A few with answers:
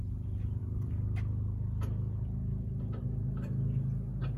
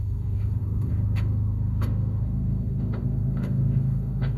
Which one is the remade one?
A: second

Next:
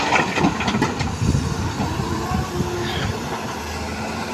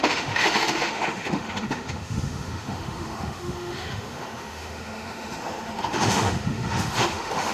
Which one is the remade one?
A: second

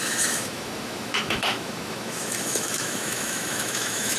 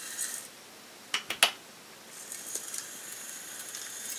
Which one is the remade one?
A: first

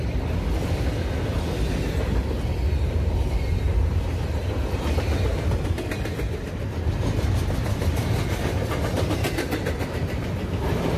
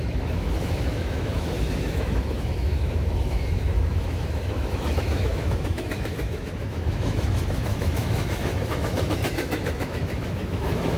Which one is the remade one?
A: second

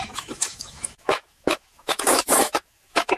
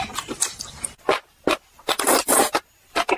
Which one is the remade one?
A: first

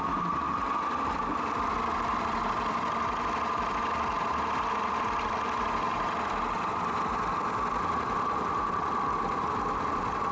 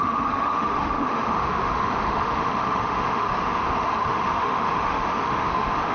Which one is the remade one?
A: second